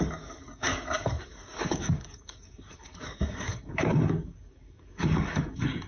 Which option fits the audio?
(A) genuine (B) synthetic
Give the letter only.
B